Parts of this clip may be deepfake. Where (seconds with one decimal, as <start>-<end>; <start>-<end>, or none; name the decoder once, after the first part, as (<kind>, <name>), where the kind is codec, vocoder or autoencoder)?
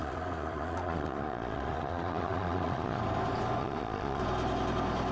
0.0-3.0 (vocoder, Vocos); 3.6-4.2